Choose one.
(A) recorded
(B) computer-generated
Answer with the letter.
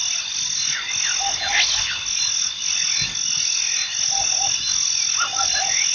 A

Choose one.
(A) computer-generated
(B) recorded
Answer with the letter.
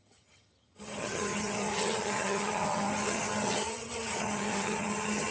A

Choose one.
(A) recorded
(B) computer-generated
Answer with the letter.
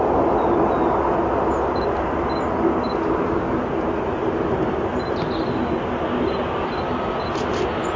A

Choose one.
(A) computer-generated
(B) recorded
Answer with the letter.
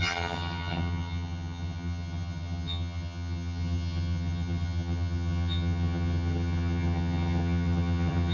A